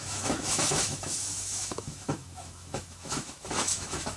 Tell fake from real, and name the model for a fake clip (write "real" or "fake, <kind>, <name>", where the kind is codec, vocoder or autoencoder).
fake, autoencoder, DAC-VAE